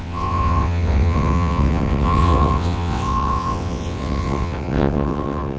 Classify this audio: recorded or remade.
remade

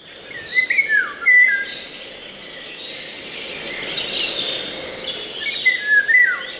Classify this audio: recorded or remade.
recorded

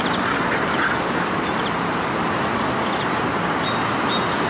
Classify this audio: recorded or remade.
recorded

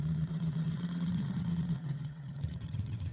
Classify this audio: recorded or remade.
remade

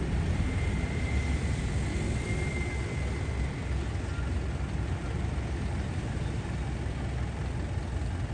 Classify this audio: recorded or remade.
recorded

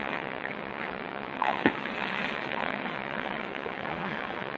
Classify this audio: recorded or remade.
remade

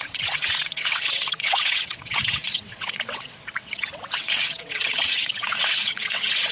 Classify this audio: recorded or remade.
remade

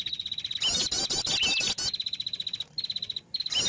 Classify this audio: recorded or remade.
recorded